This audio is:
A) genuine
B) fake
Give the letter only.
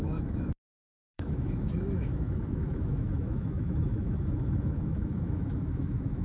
B